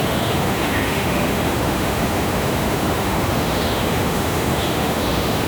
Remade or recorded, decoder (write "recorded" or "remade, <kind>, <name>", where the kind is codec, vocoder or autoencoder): remade, autoencoder, DAC-VAE